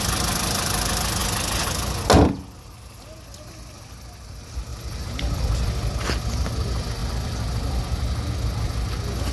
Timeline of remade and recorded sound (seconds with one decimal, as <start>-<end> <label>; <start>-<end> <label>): 0.0-4.7 recorded; 4.7-5.4 remade; 5.4-7.0 recorded; 7.0-7.8 remade; 7.8-9.3 recorded